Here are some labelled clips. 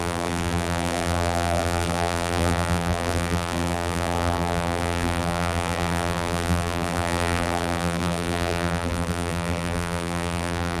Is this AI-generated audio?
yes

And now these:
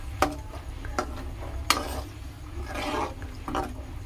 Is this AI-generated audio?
no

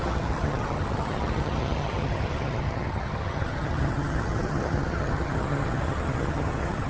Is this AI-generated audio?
yes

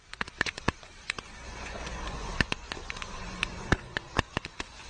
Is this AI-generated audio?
yes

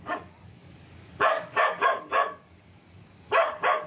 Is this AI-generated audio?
yes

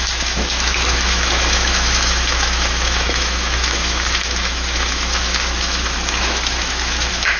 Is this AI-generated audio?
yes